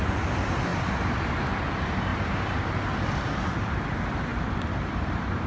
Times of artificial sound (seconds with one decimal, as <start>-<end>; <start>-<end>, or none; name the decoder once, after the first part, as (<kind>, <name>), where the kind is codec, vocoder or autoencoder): 2.1-3.7 (vocoder, BigVGAN v2); 4.3-5.5